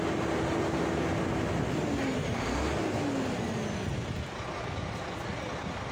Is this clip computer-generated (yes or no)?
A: no